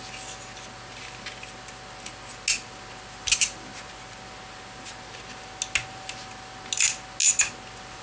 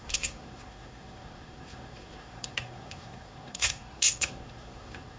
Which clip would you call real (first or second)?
first